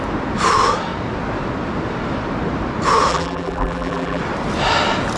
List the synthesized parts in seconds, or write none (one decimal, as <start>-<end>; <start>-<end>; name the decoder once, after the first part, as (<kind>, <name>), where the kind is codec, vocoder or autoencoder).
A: 3.1-4.2 (vocoder, BigVGAN v2)